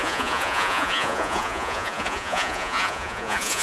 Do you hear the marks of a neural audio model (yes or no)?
yes